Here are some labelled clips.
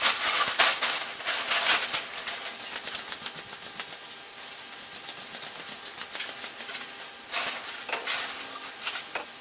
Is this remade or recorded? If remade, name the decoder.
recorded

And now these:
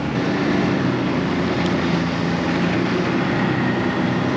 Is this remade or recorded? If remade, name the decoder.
recorded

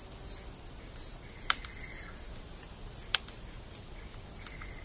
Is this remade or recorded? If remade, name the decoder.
recorded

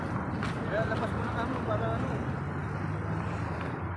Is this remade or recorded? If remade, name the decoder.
recorded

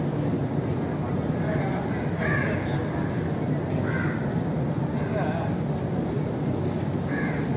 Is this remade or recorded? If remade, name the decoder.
recorded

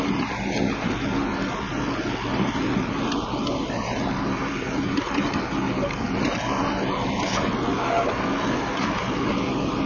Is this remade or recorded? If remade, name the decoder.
recorded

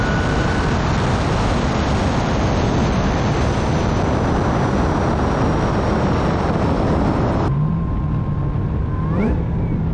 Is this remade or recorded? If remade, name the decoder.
recorded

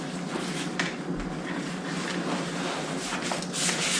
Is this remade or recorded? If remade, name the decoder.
recorded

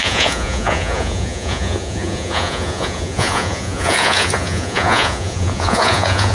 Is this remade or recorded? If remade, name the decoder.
remade, vocoder, Vocos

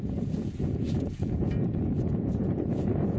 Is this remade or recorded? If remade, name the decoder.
remade, vocoder, Vocos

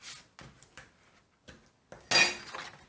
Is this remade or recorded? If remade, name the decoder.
recorded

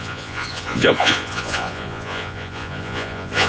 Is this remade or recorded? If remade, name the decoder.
remade, vocoder, Vocos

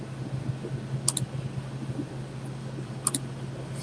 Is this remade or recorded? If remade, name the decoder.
recorded